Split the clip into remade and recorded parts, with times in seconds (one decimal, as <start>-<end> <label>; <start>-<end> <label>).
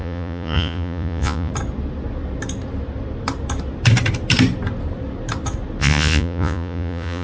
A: 0.0-1.5 remade; 1.5-5.8 recorded; 5.8-7.2 remade